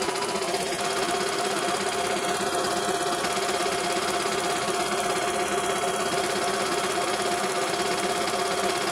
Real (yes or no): yes